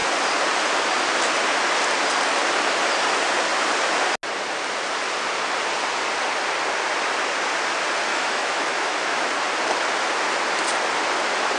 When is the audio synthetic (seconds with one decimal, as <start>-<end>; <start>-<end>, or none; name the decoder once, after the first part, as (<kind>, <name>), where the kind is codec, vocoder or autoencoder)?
8.1-9.3 (autoencoder, DAC-VAE)